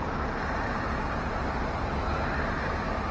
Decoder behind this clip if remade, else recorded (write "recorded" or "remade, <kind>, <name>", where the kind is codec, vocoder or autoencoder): remade, vocoder, BigVGAN v2